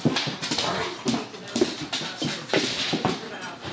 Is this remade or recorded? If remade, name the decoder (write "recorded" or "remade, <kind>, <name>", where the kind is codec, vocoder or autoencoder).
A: recorded